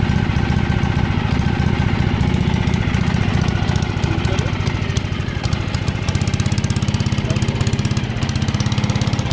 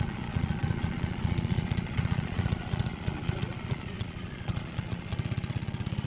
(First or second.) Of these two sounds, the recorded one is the first